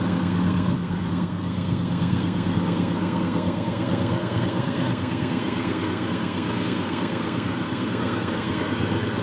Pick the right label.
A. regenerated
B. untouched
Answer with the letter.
A